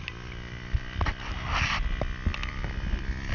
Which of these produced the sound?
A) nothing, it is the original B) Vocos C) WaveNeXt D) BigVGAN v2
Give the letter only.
A